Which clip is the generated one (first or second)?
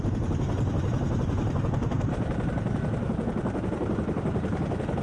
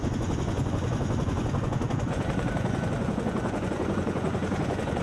second